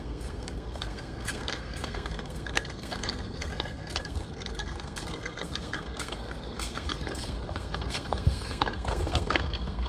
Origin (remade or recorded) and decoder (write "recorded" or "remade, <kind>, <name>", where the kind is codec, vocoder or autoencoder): remade, codec, SNAC